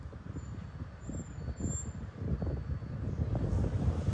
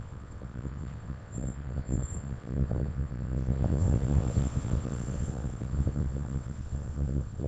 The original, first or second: first